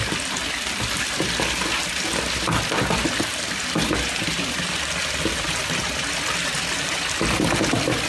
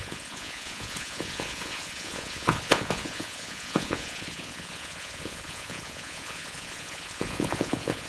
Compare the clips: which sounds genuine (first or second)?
first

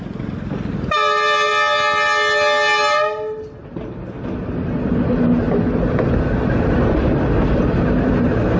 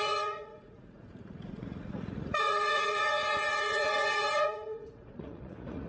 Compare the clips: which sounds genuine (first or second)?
first